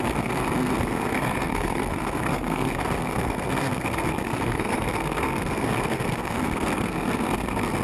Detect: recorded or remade remade